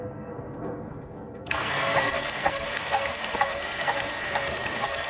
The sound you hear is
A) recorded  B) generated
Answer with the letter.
B